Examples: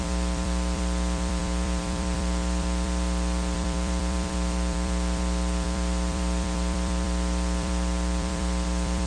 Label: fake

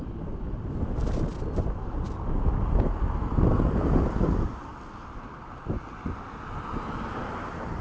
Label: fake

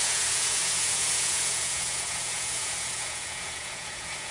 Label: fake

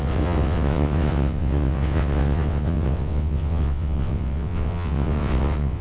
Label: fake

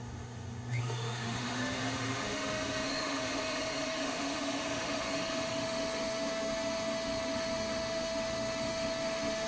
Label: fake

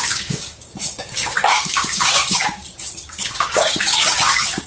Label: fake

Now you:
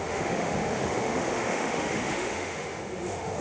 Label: fake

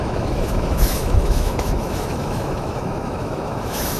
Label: fake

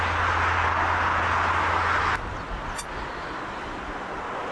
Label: real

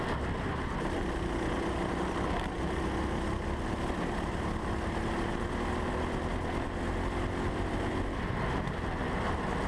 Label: real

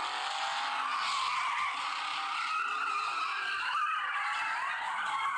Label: real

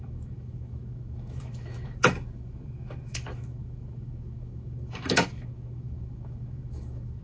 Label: fake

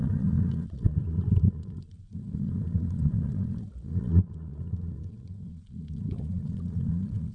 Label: fake